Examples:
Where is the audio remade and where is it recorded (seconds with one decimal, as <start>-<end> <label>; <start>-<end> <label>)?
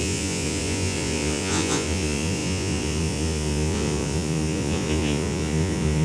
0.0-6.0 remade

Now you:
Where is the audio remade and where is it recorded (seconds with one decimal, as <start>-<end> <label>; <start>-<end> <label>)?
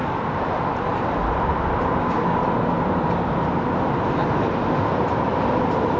0.0-2.0 recorded; 2.0-2.4 remade; 2.4-6.0 recorded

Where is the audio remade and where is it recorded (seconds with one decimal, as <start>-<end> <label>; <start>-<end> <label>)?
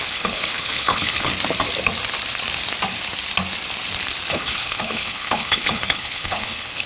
0.0-1.3 remade; 1.3-4.3 recorded; 4.3-6.9 remade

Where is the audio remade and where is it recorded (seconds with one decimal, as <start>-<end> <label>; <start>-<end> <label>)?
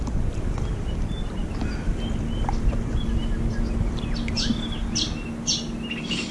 0.0-6.3 recorded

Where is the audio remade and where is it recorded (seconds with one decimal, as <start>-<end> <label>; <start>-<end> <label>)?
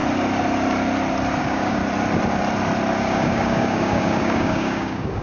0.0-1.4 recorded; 1.4-1.8 remade; 1.8-3.0 recorded; 3.0-5.2 remade